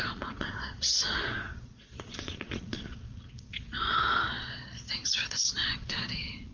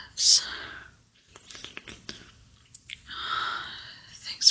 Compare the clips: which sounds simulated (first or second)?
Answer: first